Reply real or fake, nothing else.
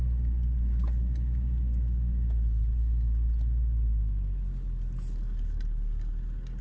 real